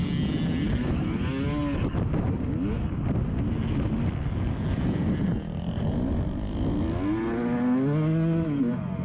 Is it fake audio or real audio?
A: real